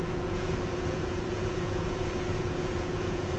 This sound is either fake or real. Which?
fake